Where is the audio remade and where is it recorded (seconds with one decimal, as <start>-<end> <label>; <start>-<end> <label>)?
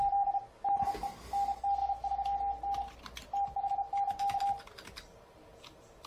0.0-6.1 recorded